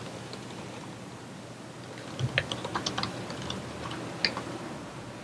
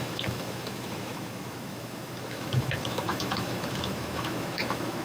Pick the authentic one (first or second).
first